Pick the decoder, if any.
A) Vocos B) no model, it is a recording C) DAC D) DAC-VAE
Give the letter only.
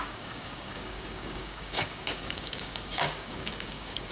C